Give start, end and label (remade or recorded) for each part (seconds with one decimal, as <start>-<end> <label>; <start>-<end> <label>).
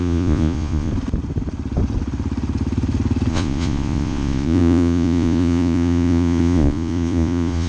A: 0.0-0.9 remade; 0.9-3.3 recorded; 3.3-7.7 remade